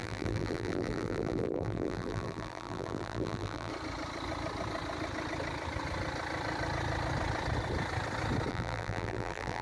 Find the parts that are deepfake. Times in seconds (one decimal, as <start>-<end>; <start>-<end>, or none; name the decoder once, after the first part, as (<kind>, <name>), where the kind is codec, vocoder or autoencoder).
0.0-3.7 (vocoder, BigVGAN v2); 8.5-9.6